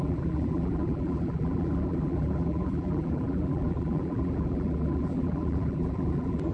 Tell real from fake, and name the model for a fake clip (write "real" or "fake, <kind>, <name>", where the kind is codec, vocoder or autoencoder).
fake, vocoder, BigVGAN v2